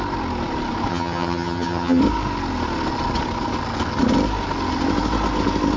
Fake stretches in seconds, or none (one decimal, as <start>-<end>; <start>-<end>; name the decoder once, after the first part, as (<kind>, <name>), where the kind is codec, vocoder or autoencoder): 0.9-2.0 (vocoder, HiFi-GAN)